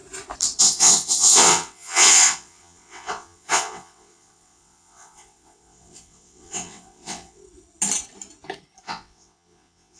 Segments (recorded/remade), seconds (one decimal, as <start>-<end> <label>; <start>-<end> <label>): 0.0-0.6 recorded; 0.6-7.4 remade; 7.4-8.8 recorded; 8.8-10.0 remade